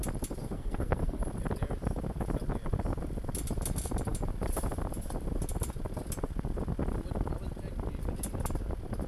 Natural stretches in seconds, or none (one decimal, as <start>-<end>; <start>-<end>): 0.0-0.4; 1.2-9.1